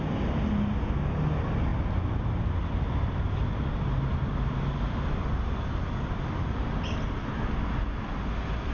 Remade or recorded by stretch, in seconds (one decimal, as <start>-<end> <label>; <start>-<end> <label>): 0.0-8.7 recorded